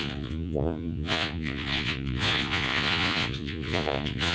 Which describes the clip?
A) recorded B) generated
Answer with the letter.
B